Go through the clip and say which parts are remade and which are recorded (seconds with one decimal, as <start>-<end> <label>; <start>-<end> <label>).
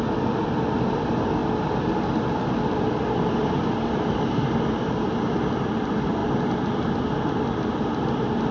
0.0-8.5 recorded